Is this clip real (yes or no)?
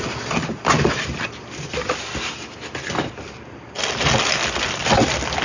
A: yes